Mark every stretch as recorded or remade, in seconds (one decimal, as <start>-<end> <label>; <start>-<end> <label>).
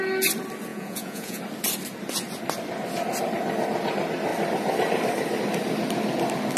0.0-0.7 recorded; 0.7-1.4 remade; 1.4-6.6 recorded